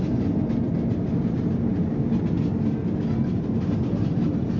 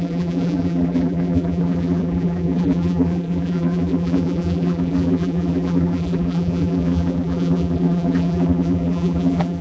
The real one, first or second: first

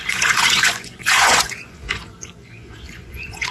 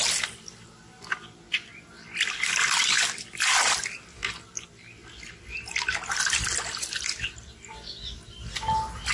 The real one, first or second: second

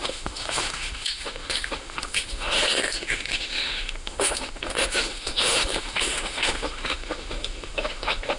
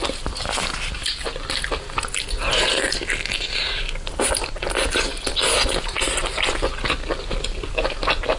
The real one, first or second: second